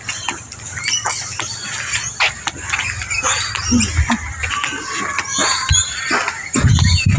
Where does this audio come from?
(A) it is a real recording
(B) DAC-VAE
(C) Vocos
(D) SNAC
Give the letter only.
A